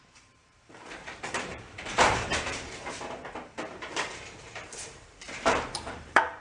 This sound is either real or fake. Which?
fake